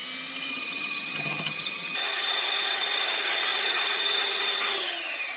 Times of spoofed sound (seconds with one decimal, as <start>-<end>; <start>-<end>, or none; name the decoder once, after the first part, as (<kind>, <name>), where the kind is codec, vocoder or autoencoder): 0.5-5.4 (vocoder, HiFi-GAN)